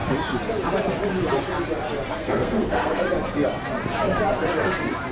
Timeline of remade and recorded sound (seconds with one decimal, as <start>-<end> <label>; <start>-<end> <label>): 0.0-2.1 recorded; 2.1-3.0 remade; 3.0-5.1 recorded